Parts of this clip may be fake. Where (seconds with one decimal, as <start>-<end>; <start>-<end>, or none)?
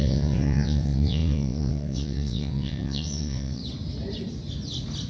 0.0-3.6